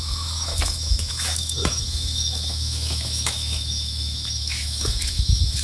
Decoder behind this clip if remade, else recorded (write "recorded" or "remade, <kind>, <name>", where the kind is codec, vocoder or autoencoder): remade, autoencoder, DAC-VAE